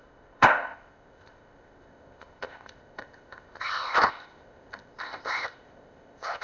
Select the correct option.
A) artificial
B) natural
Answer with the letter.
A